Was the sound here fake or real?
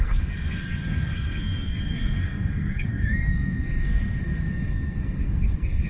fake